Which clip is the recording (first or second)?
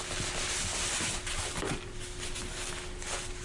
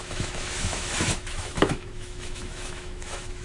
first